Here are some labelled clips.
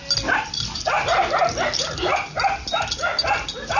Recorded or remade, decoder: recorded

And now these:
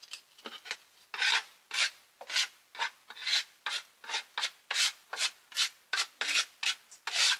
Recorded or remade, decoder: recorded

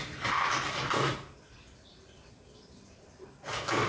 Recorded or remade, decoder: recorded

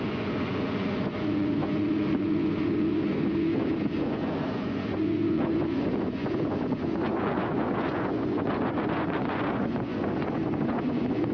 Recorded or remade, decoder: remade, vocoder, Vocos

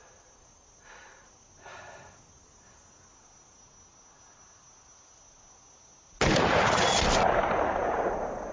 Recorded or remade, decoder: recorded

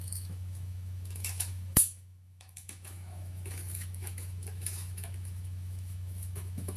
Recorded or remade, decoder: remade, autoencoder, DAC-VAE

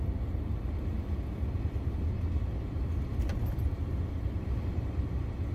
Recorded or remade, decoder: recorded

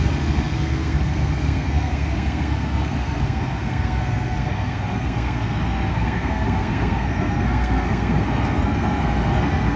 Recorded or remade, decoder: remade, codec, SNAC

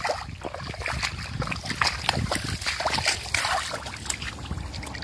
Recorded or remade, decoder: recorded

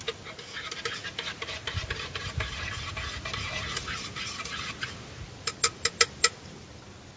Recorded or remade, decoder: recorded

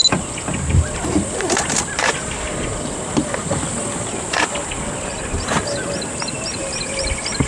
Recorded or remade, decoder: recorded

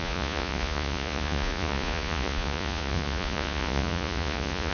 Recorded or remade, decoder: remade, vocoder, Vocos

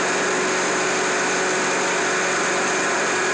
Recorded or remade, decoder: recorded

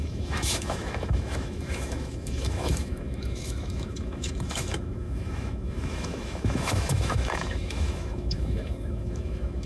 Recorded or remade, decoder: remade, autoencoder, DAC-VAE